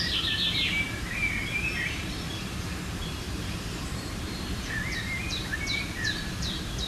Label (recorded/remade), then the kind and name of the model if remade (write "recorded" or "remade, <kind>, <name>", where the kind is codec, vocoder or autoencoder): remade, vocoder, BigVGAN v2